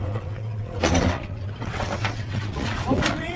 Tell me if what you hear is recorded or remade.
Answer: remade